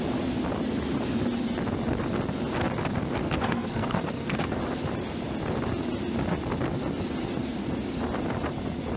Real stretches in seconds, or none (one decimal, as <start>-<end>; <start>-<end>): 0.0-3.2; 4.6-9.0